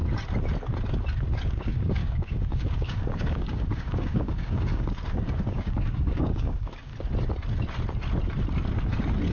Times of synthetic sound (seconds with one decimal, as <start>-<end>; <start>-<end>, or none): 1.4-6.9